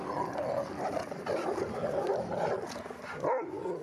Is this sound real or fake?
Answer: real